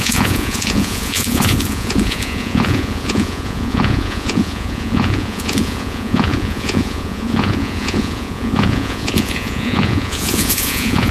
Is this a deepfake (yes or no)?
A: yes